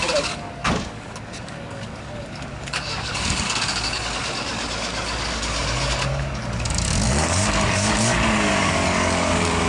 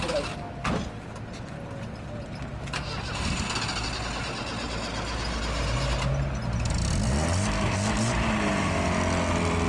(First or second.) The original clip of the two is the second